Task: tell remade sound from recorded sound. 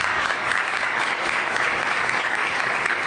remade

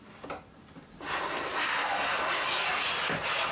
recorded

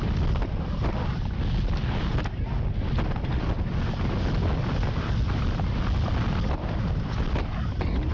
recorded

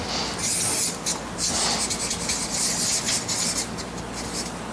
recorded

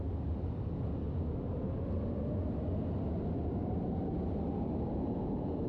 recorded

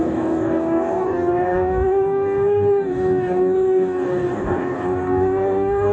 remade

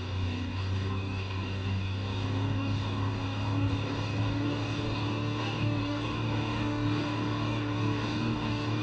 remade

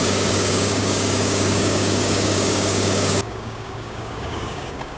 remade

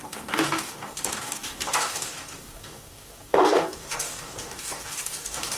remade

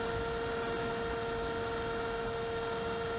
recorded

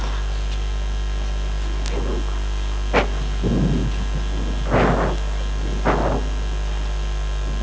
recorded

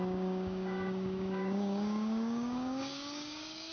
remade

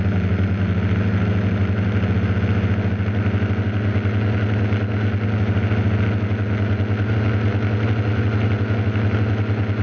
recorded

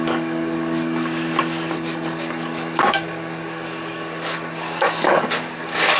remade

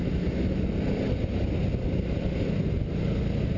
recorded